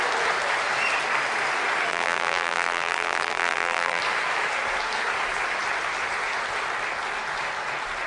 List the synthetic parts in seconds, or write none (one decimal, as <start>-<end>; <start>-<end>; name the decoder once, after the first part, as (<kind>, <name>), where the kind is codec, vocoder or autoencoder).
1.9-4.0 (vocoder, BigVGAN v2)